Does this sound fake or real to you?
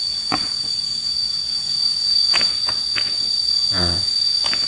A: fake